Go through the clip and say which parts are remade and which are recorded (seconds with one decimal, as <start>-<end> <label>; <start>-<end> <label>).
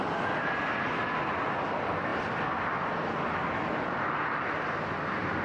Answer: 0.0-5.4 recorded